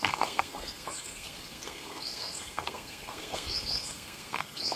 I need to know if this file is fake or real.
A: fake